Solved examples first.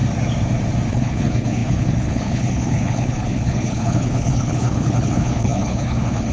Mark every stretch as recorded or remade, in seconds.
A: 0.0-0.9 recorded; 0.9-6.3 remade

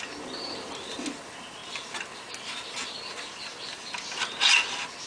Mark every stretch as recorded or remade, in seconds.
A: 0.0-5.1 recorded

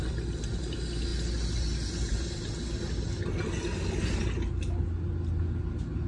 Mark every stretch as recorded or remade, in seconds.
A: 0.0-6.1 recorded